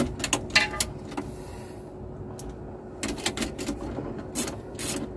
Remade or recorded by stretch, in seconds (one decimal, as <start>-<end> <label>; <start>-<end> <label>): 0.0-5.2 recorded